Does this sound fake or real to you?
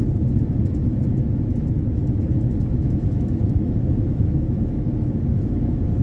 fake